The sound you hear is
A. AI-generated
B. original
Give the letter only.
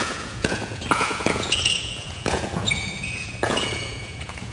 A